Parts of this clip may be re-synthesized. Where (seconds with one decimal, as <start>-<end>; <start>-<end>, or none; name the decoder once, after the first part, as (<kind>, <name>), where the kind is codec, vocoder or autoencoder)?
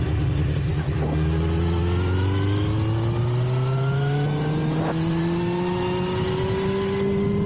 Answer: none